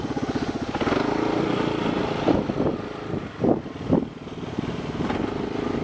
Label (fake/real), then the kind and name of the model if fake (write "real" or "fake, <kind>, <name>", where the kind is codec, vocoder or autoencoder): real